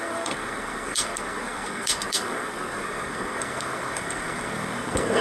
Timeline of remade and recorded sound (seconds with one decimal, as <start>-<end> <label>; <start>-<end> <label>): 0.0-5.2 remade

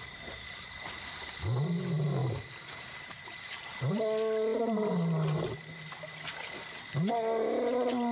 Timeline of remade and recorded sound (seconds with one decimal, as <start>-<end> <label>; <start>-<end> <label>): 0.0-8.1 recorded